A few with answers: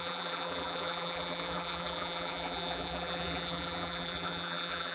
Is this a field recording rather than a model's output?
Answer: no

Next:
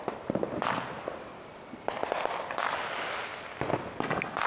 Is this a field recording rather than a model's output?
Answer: yes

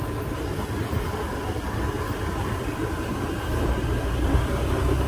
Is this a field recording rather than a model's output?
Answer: yes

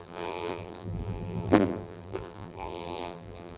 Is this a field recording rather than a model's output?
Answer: no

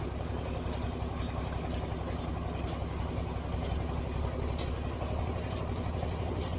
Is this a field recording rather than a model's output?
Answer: yes